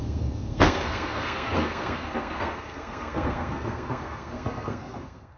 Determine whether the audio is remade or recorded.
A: remade